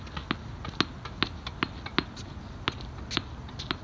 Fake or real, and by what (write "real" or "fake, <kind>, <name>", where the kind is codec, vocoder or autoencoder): real